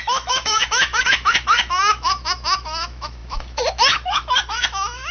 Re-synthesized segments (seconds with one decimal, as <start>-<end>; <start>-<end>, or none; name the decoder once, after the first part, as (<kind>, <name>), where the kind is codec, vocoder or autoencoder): 0.0-5.1 (autoencoder, DAC-VAE)